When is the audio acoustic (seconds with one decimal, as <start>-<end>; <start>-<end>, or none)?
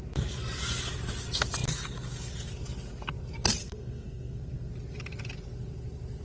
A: 0.0-3.6; 4.7-6.2